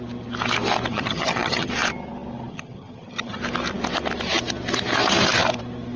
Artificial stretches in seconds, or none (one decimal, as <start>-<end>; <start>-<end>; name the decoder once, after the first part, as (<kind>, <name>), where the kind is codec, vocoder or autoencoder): 0.9-1.7 (vocoder, HiFi-GAN); 2.5-3.4

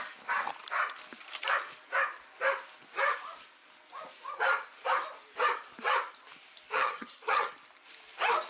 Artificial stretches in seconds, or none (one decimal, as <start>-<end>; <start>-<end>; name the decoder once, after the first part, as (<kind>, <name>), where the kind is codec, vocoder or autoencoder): 6.7-7.5 (vocoder, HiFi-GAN)

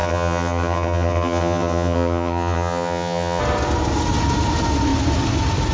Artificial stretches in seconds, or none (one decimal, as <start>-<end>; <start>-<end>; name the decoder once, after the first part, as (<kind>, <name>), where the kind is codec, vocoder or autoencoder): 0.0-3.4 (vocoder, HiFi-GAN)

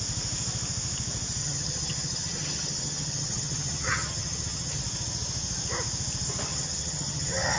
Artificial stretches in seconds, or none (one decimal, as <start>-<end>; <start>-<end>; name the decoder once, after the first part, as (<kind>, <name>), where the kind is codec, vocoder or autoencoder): 1.4-4.8 (vocoder, HiFi-GAN); 6.5-7.6

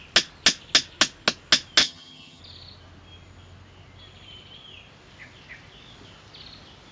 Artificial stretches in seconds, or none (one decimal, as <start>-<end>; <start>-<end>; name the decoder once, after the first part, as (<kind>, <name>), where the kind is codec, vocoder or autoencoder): 1.8-2.4 (vocoder, HiFi-GAN)